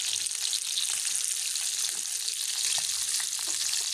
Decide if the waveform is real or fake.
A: real